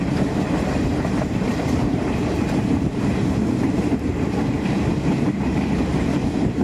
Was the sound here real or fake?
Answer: fake